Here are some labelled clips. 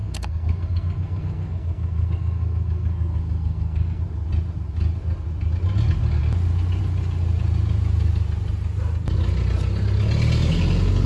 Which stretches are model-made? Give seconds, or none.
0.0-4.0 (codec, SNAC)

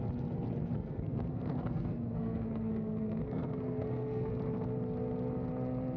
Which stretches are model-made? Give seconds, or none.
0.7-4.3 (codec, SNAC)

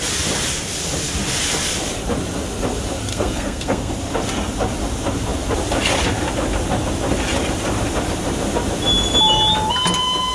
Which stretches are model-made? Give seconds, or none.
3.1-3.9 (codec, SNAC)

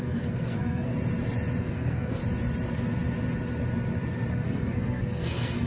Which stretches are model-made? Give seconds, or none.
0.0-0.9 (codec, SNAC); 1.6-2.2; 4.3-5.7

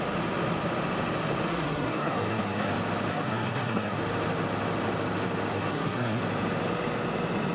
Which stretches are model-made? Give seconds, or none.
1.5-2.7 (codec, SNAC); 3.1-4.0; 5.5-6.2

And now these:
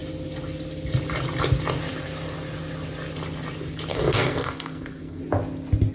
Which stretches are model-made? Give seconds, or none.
3.9-5.2 (codec, SNAC)